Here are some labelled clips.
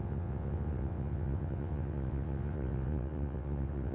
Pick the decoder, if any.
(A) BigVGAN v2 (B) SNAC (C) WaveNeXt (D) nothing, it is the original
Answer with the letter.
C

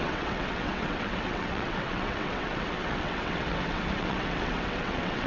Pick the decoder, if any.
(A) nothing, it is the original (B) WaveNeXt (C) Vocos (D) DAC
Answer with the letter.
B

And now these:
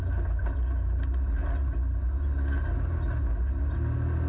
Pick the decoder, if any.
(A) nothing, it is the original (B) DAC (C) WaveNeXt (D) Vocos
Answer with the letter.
A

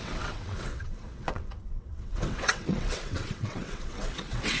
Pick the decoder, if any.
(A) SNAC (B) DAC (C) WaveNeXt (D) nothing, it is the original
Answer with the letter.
C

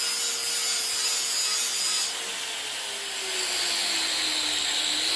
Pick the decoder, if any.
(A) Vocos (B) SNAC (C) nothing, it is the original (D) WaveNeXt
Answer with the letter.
C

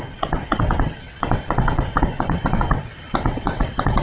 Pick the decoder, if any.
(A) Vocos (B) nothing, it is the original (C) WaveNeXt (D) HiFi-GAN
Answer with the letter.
C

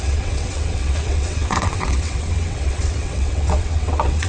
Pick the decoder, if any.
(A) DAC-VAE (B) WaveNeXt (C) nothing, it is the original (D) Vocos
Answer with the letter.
B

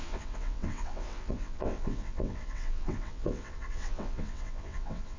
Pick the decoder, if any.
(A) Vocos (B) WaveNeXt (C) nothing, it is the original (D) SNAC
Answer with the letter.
B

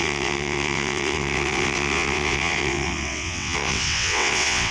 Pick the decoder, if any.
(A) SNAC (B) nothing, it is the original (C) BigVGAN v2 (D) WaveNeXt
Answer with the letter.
D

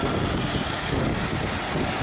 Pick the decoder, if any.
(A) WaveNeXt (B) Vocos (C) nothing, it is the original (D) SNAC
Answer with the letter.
C